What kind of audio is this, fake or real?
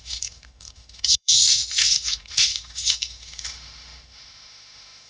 fake